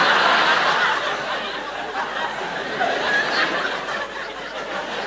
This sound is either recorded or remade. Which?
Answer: recorded